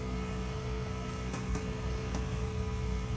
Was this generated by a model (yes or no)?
yes